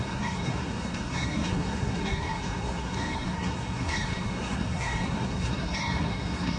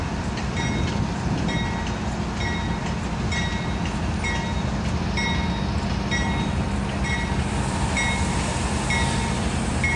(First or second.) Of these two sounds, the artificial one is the first